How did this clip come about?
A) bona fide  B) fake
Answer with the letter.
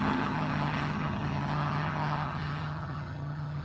B